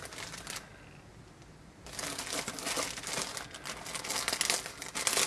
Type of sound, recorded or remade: recorded